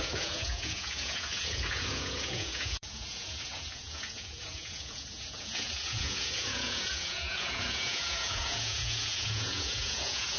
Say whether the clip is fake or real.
fake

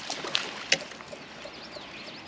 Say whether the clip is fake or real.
real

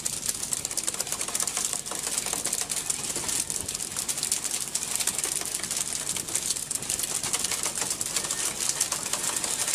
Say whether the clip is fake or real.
real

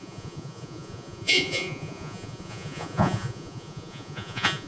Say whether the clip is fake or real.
fake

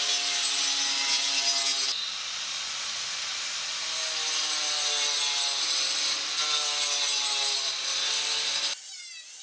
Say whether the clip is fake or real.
real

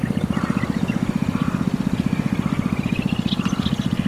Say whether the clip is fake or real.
real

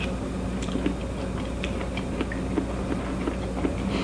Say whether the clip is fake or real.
real